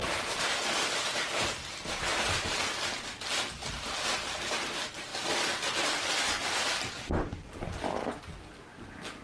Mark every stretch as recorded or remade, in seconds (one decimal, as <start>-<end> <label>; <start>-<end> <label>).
0.0-0.6 remade; 0.6-5.1 recorded; 5.1-8.2 remade; 8.2-9.2 recorded